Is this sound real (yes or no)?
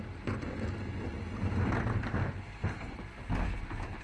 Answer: yes